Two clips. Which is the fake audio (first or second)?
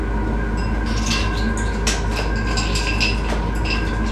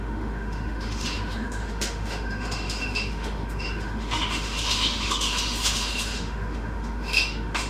second